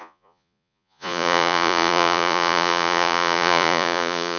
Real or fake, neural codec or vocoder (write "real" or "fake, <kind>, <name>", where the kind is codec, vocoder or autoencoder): fake, vocoder, Vocos